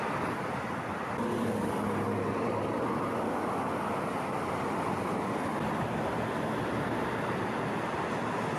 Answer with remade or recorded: recorded